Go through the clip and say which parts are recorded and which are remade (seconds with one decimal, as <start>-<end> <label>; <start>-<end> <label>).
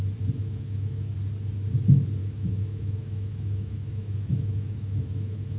0.0-0.4 recorded; 0.4-1.1 remade; 1.1-2.2 recorded; 2.2-5.6 remade